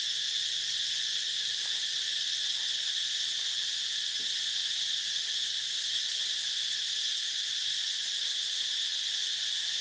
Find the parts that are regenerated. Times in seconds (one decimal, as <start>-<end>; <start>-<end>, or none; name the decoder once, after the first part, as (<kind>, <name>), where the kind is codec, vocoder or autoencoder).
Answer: 0.0-4.6 (vocoder, BigVGAN v2); 6.3-8.9